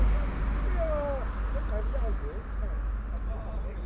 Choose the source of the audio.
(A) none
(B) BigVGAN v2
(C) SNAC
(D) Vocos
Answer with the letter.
A